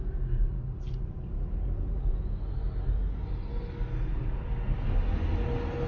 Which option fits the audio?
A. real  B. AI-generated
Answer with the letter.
A